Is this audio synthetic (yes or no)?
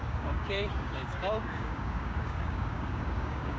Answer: yes